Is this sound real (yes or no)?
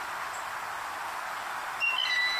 yes